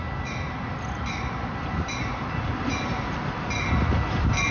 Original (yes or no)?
yes